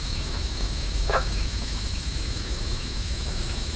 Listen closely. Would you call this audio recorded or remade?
remade